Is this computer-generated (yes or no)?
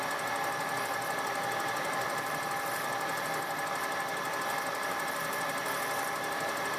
no